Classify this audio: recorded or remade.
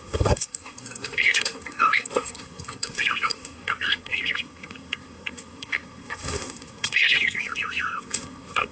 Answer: remade